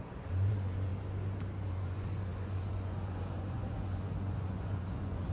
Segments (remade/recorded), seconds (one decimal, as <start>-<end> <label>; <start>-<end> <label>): 0.0-0.9 remade; 0.9-1.7 recorded; 1.7-5.3 remade